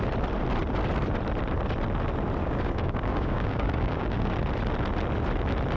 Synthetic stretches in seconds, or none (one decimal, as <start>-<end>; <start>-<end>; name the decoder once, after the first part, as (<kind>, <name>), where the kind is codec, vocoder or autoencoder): 2.4-4.3 (codec, DAC)